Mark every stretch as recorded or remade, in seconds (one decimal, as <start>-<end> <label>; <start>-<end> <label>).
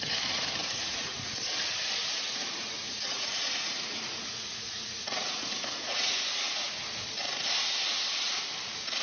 0.0-0.6 recorded; 0.6-1.3 remade; 1.3-2.0 recorded; 2.0-6.7 remade; 6.7-9.0 recorded